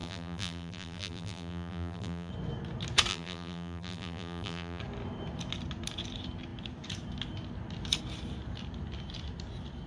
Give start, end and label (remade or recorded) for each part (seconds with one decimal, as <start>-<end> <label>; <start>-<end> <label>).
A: 0.0-2.3 remade; 2.3-3.1 recorded; 3.1-4.8 remade; 4.8-9.9 recorded